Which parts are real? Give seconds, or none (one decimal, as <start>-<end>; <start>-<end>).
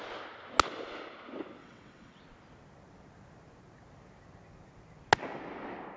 0.0-1.6; 2.2-6.0